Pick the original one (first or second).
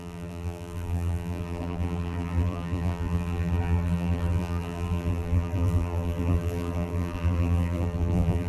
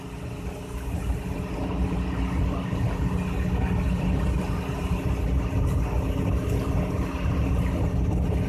second